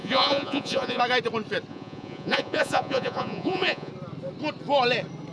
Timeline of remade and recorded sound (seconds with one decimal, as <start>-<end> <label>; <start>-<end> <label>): 0.0-1.0 remade; 1.0-1.7 recorded; 1.7-3.9 remade; 3.9-5.3 recorded